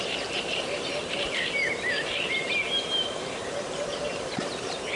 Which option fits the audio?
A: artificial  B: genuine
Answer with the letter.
A